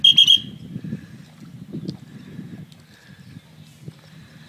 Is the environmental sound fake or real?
real